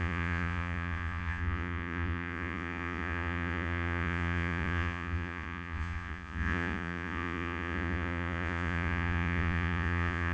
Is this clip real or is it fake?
fake